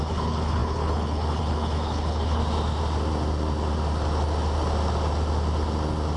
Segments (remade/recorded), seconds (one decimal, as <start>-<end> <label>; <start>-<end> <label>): 0.0-2.4 remade; 2.4-6.2 recorded